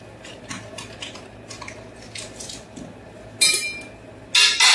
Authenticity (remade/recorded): recorded